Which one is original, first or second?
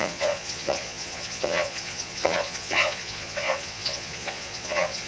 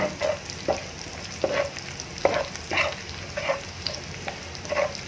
second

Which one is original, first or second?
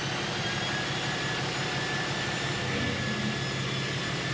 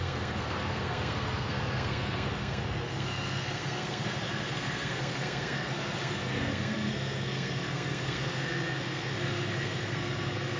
first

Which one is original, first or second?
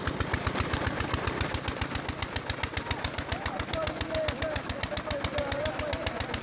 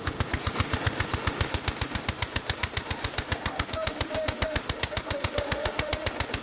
first